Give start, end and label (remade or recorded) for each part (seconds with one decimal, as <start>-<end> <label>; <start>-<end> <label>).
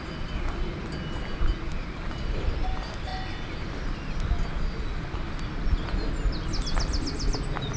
0.0-1.7 recorded; 1.7-2.7 remade; 2.7-7.8 recorded